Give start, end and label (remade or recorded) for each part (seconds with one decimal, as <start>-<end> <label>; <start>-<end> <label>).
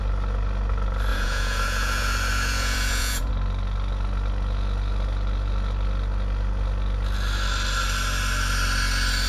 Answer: 0.0-1.1 recorded; 1.1-3.3 remade; 3.3-9.3 recorded